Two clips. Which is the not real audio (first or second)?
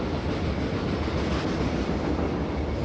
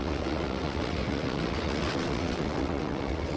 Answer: second